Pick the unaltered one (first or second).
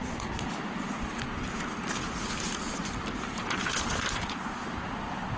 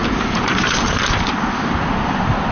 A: first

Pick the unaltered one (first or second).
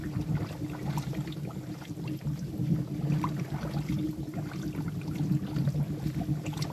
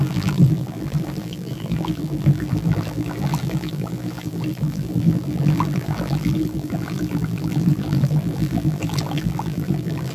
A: first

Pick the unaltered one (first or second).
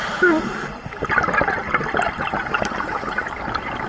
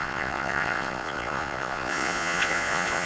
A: first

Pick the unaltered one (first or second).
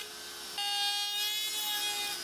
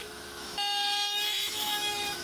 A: first